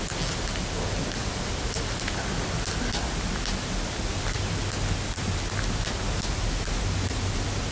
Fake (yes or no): no